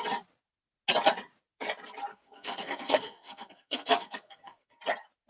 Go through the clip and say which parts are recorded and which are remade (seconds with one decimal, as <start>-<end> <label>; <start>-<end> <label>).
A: 0.0-2.1 recorded; 2.1-4.8 remade; 4.8-5.3 recorded